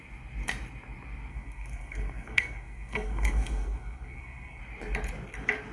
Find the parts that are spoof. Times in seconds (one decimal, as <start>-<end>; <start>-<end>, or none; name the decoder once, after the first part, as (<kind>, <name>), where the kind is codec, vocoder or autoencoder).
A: 1.3-4.6 (codec, SNAC)